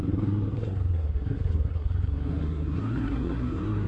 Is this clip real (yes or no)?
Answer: no